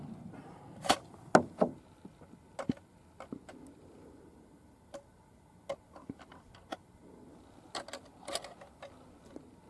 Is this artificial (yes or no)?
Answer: no